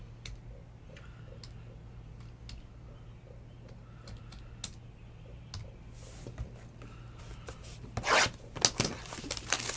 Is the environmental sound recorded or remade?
recorded